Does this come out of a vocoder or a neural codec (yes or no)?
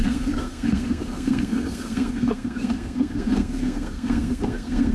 yes